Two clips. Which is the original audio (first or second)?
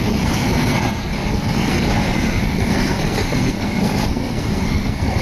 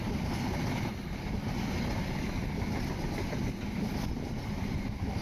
second